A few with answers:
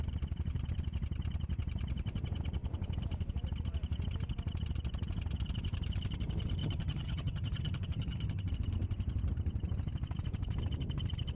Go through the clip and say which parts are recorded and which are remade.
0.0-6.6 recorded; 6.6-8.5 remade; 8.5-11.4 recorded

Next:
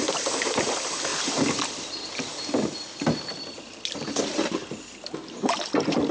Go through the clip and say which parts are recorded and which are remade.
0.0-6.1 recorded

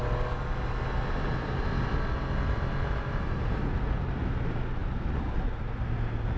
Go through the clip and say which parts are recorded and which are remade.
0.0-6.4 recorded

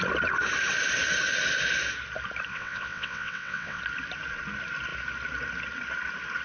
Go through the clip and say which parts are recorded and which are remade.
0.0-2.5 recorded; 2.5-3.8 remade; 3.8-6.4 recorded

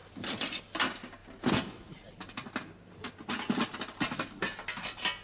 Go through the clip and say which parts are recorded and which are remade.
0.0-0.6 remade; 0.6-5.2 recorded

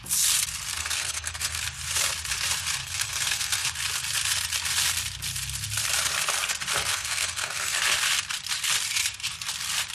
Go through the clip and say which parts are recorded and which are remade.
0.0-0.7 recorded; 0.7-1.6 remade; 1.6-2.8 recorded; 2.8-3.7 remade; 3.7-6.9 recorded; 6.9-7.8 remade; 7.8-9.9 recorded

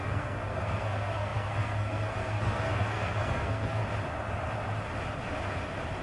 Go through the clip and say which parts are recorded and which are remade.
0.0-3.8 remade; 3.8-6.0 recorded

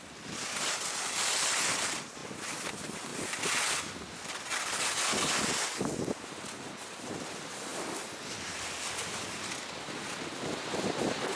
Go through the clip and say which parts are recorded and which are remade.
0.0-11.4 recorded